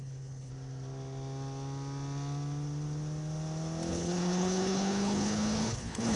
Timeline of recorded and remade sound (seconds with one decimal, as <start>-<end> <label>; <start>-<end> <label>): 0.0-0.5 remade; 0.5-3.9 recorded; 3.9-6.2 remade